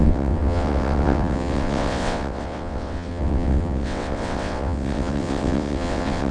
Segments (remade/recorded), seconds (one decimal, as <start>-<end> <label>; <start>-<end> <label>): 0.0-6.3 remade